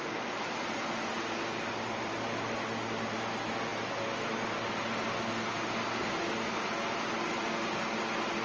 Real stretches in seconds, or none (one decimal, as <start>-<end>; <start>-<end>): 0.0-8.4